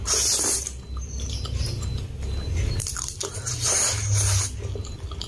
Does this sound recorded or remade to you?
recorded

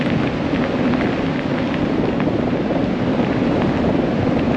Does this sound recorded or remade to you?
recorded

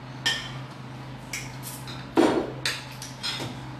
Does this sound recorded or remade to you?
recorded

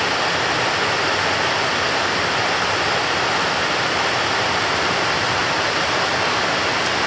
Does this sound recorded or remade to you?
recorded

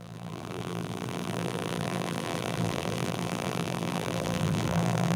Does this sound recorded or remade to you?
remade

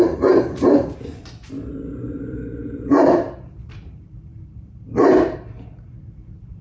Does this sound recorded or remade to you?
remade